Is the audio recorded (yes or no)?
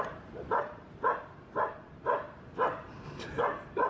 yes